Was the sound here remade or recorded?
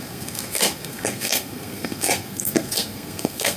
remade